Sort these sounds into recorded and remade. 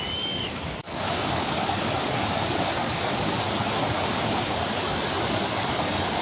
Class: remade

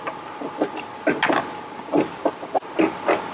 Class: recorded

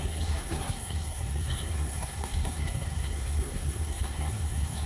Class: remade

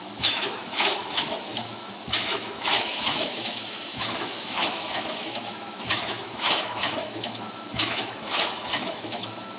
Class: remade